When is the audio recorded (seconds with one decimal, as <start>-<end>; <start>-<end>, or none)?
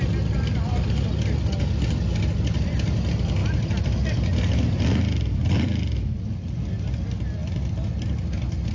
0.0-8.7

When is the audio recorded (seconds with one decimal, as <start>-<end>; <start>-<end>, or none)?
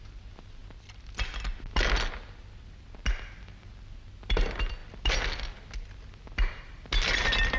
0.0-7.6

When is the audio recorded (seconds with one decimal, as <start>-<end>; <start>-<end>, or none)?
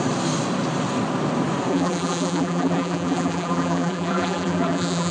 0.0-1.7